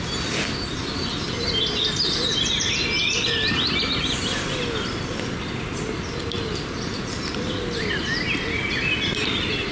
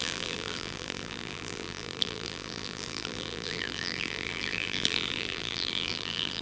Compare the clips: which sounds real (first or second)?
first